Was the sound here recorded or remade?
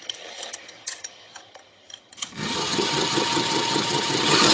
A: remade